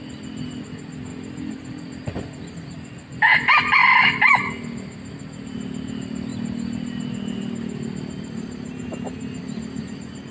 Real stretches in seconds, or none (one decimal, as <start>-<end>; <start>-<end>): 0.0-1.1; 2.5-3.8; 4.4-10.3